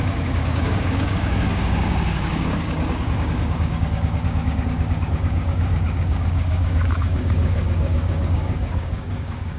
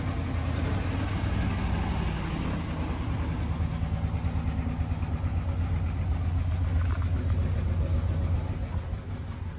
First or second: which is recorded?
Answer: second